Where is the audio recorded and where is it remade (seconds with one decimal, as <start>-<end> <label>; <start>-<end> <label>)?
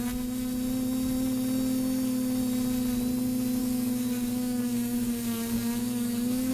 0.0-3.6 recorded; 3.6-6.5 remade